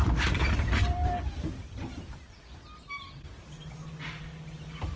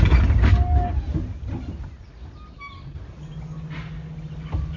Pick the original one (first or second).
second